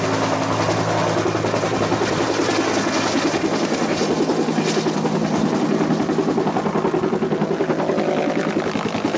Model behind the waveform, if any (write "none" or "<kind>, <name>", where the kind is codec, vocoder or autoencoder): none